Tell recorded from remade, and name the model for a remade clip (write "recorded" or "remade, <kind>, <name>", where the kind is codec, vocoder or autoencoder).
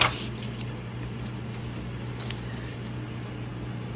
recorded